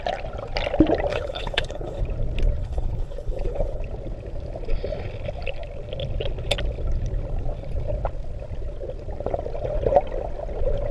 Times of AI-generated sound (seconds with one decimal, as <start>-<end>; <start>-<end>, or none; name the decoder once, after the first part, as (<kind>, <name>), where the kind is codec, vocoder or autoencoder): 1.1-2.0 (codec, HILCodec); 2.6-3.8